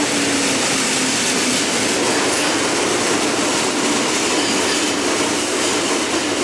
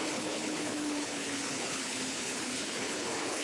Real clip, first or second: first